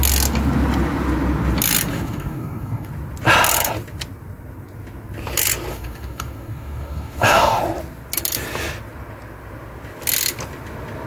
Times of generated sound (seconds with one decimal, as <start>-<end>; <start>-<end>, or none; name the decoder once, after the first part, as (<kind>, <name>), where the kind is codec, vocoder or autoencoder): 1.9-2.9 (codec, DAC); 5.7-7.6